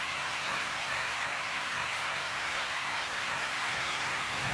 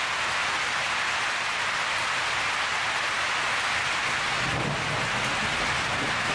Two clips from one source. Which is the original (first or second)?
second